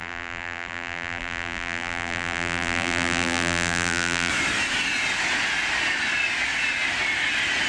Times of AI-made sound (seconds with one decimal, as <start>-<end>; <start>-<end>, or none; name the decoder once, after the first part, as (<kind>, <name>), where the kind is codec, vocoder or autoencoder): 0.0-4.3 (vocoder, BigVGAN v2)